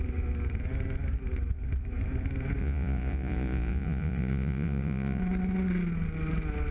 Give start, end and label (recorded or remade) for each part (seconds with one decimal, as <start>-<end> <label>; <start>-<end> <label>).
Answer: 0.0-2.6 recorded; 2.6-5.2 remade; 5.2-6.7 recorded